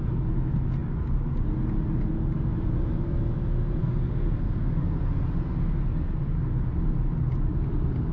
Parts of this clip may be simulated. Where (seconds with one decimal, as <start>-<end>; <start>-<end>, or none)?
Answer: 3.8-5.1